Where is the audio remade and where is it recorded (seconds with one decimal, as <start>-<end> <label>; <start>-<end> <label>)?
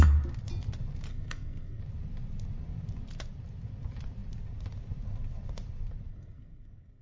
0.0-1.1 recorded; 1.1-1.8 remade; 1.8-6.1 recorded; 6.1-7.0 remade